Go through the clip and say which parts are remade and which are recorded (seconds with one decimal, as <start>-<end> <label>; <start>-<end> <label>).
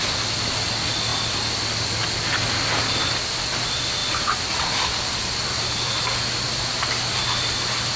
0.0-8.0 recorded